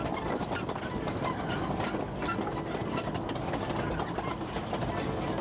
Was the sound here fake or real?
real